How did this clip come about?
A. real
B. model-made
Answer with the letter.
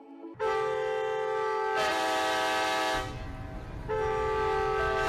A